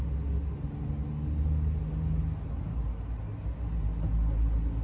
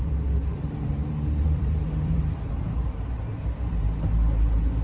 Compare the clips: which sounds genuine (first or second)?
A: first